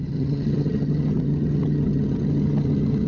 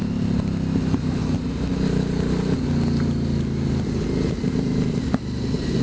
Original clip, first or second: second